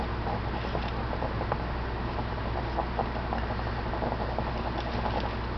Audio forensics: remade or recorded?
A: recorded